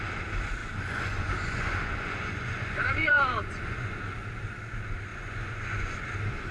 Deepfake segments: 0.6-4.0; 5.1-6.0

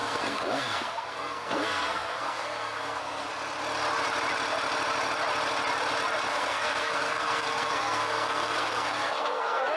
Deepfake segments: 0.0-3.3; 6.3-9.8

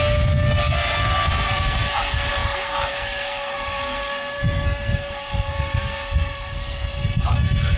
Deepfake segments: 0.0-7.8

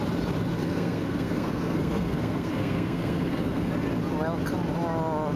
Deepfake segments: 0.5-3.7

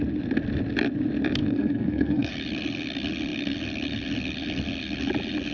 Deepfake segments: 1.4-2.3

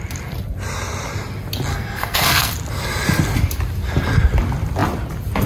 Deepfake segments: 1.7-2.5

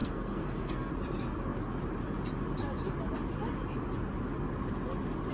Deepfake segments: 0.0-0.9

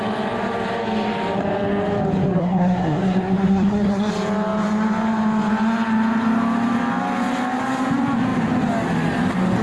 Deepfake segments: 2.4-4.1